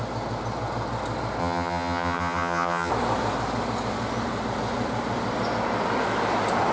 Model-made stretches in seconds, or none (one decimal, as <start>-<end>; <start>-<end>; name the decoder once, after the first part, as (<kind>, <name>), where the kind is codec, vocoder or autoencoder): 1.4-2.9 (vocoder, HiFi-GAN)

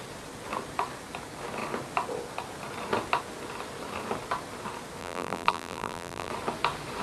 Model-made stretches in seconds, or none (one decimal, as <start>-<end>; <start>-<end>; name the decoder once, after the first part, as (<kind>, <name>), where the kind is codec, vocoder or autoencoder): 5.0-6.3 (vocoder, BigVGAN v2)